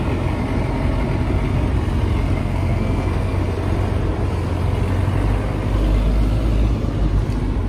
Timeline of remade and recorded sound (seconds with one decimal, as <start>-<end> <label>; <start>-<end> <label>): 0.0-2.4 recorded; 2.4-3.4 remade; 3.4-7.7 recorded